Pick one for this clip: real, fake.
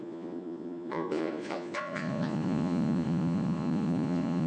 fake